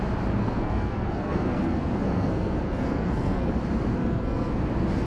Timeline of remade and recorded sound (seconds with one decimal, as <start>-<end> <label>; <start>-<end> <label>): 0.0-0.4 recorded; 0.4-3.5 remade; 3.5-4.0 recorded; 4.0-4.6 remade; 4.6-5.1 recorded